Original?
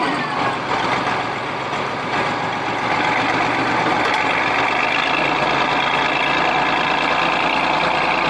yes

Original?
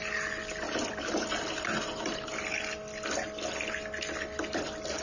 yes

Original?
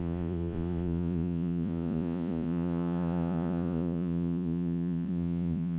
no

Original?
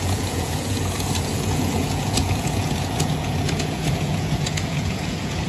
no